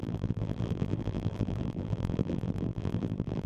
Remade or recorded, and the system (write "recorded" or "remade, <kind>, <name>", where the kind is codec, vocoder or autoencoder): remade, vocoder, BigVGAN v2